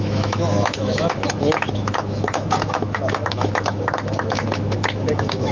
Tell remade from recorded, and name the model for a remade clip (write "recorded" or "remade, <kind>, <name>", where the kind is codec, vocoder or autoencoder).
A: remade, autoencoder, DAC-VAE